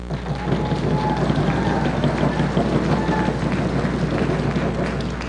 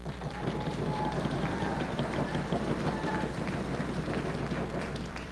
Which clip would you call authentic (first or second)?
first